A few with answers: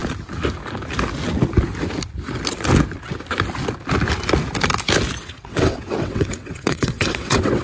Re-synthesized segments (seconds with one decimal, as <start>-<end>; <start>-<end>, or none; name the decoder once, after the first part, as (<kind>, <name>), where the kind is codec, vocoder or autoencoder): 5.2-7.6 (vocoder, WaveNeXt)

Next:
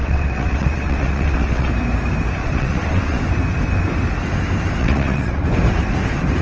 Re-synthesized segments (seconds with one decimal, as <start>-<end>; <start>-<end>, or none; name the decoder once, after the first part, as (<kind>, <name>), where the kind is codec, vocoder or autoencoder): 0.0-1.7 (vocoder, WaveNeXt); 2.4-3.2; 4.8-5.4

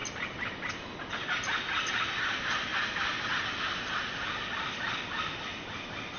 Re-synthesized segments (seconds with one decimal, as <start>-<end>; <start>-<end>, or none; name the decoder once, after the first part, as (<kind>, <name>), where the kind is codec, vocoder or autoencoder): none